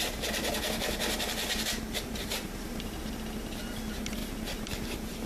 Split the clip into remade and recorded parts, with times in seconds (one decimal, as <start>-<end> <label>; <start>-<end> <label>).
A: 0.0-1.9 recorded; 1.9-3.0 remade; 3.0-4.2 recorded; 4.2-5.3 remade